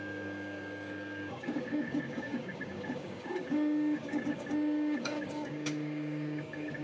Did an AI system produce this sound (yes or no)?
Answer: yes